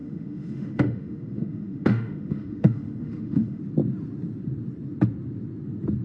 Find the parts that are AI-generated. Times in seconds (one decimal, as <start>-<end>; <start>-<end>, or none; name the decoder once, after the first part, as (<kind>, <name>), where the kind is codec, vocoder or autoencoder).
0.0-3.6 (autoencoder, DAC-VAE)